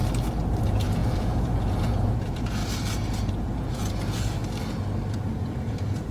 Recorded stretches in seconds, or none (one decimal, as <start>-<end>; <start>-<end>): 0.0-0.6; 2.6-3.3; 4.4-5.1